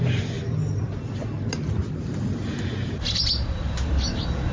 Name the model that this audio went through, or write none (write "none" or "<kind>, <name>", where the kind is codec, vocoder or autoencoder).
none